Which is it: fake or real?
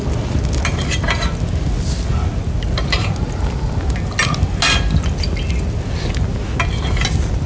real